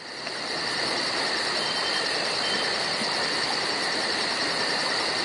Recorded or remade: recorded